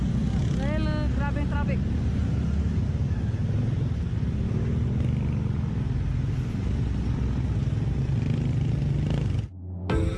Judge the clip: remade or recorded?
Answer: recorded